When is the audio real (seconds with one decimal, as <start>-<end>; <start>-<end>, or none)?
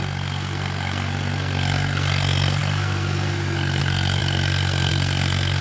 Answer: none